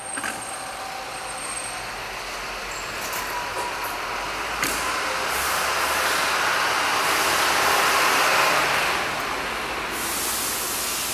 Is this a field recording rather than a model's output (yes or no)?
yes